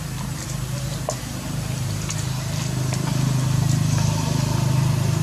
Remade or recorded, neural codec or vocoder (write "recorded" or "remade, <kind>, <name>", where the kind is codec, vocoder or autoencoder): recorded